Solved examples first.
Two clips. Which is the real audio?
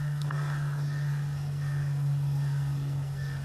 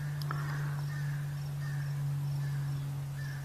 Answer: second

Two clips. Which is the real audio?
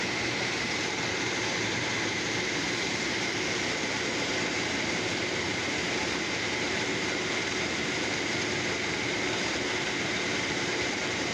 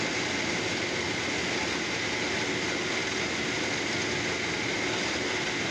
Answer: second